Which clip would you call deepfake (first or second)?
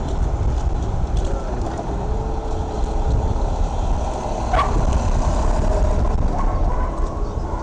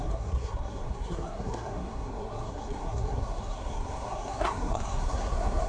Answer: second